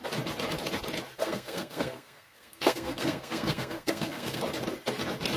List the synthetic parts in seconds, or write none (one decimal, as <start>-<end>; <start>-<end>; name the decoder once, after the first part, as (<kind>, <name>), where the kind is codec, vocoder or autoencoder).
1.2-4.4 (codec, SNAC)

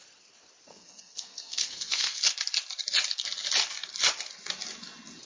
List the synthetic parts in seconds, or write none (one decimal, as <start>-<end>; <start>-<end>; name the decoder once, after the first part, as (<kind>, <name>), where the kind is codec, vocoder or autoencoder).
0.7-2.2 (codec, SNAC)

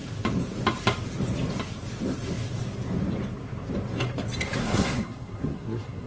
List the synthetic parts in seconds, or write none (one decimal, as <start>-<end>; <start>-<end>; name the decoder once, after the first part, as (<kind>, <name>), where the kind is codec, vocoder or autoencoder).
4.6-6.1 (codec, SNAC)